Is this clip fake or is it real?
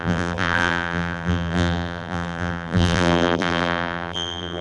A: fake